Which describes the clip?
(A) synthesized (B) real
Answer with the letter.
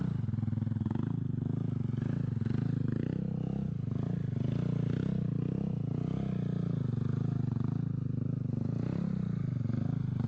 B